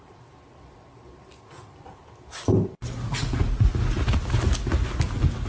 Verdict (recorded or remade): recorded